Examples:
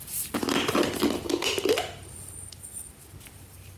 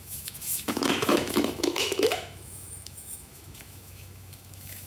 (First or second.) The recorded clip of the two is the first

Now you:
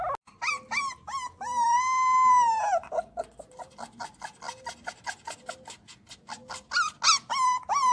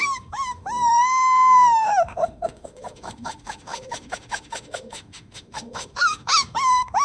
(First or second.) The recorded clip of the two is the first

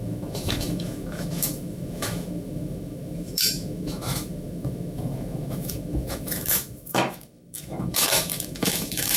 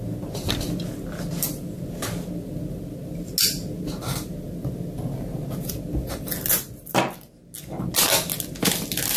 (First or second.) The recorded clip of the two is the second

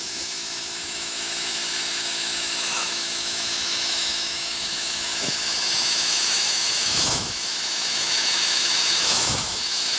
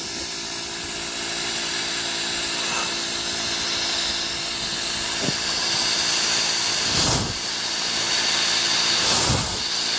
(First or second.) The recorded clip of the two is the second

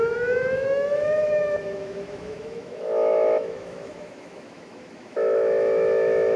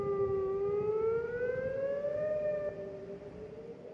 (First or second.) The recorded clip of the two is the second